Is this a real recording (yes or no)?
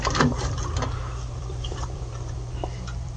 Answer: no